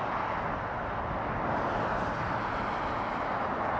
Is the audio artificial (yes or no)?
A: no